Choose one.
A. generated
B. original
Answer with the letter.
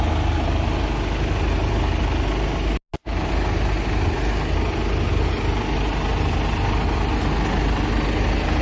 B